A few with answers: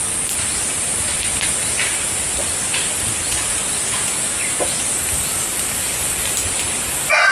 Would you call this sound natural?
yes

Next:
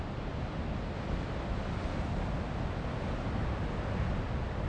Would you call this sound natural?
yes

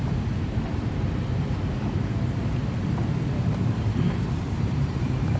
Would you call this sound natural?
no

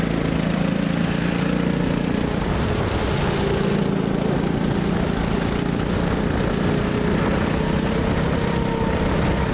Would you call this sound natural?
yes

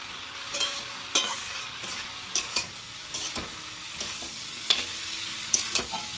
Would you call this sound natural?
no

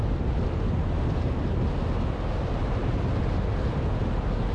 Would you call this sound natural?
yes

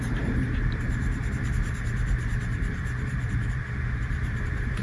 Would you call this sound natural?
no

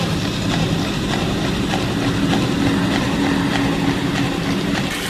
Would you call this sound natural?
yes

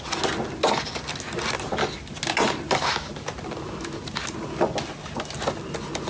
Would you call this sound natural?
yes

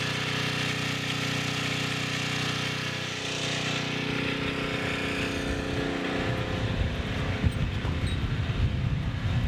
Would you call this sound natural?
yes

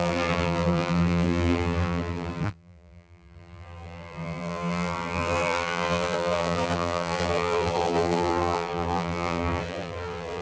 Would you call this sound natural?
no